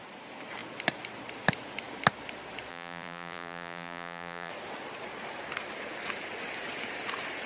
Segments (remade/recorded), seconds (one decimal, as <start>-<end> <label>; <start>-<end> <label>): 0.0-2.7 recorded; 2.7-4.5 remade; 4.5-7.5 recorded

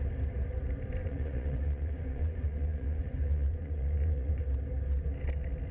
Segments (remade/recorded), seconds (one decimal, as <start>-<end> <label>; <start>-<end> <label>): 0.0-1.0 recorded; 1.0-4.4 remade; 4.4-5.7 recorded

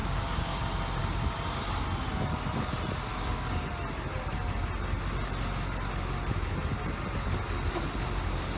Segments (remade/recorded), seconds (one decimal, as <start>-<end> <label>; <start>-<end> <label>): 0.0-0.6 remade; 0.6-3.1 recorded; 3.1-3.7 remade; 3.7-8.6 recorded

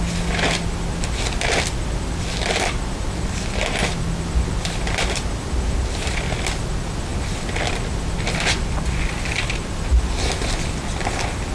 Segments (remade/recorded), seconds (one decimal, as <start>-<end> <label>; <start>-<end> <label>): 0.0-8.5 recorded; 8.5-9.1 remade; 9.1-11.5 recorded

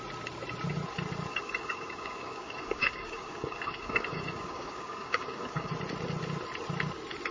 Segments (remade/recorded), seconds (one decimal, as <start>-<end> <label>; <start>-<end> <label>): 0.0-1.3 recorded; 1.3-5.7 remade; 5.7-7.3 recorded

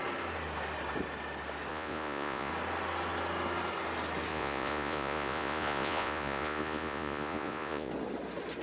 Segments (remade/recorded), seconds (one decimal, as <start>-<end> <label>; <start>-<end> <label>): 0.0-1.7 recorded; 1.7-2.5 remade; 2.5-4.3 recorded; 4.3-7.9 remade; 7.9-8.6 recorded

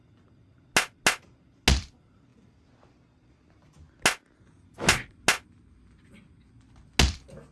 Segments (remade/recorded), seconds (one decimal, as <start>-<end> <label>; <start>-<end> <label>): 0.0-7.5 recorded

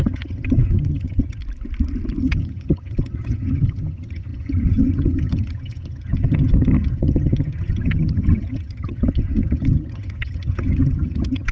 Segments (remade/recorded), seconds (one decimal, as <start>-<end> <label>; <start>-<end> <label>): 0.0-1.4 remade; 1.4-2.2 recorded; 2.2-11.5 remade